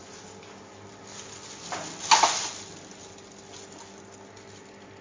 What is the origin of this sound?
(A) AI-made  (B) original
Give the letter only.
B